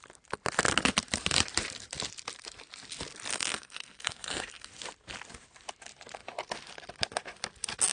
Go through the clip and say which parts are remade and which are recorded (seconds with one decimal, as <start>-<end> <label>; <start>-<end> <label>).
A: 0.0-3.3 recorded; 3.3-4.7 remade; 4.7-7.9 recorded

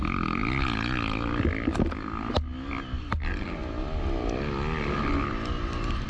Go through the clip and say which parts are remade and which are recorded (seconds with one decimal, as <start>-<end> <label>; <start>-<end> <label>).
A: 0.0-6.1 recorded